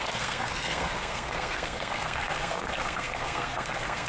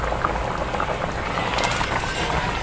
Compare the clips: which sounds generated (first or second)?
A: first